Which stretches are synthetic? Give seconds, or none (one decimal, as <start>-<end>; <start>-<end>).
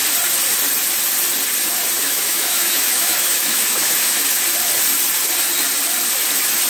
2.0-4.4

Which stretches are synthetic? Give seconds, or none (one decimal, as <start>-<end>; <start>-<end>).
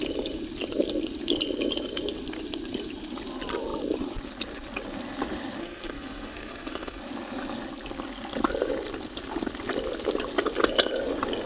5.6-7.0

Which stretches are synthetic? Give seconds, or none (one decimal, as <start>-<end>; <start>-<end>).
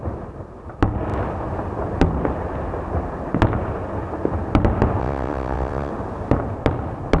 5.0-5.9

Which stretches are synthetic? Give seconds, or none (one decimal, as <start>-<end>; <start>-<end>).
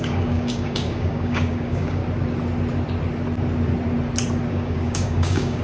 0.0-2.0; 4.5-5.6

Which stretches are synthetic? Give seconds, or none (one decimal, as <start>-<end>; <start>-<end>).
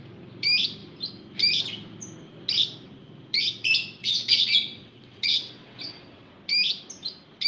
4.0-6.3